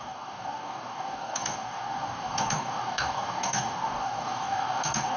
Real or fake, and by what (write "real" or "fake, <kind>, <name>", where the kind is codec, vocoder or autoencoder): fake, codec, DAC